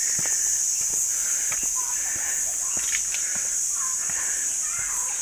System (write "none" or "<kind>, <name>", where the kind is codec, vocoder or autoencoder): none